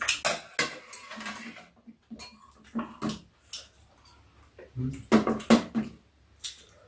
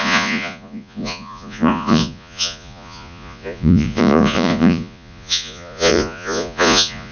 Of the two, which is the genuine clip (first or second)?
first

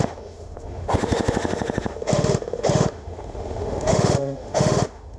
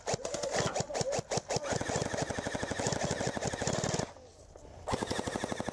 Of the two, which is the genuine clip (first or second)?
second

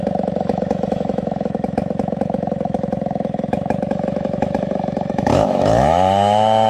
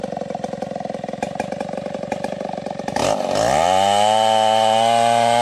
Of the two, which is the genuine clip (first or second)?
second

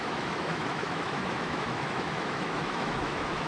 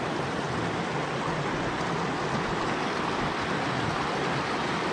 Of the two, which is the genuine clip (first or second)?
second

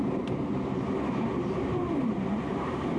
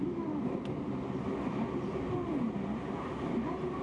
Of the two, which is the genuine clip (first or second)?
second